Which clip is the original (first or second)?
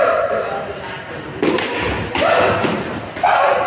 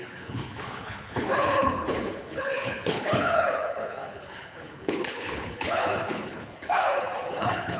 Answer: first